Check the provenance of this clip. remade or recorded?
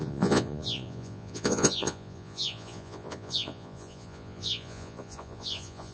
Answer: remade